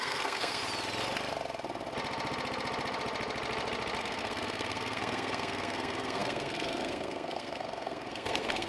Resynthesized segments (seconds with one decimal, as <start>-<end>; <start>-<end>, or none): 0.0-0.6; 4.0-8.7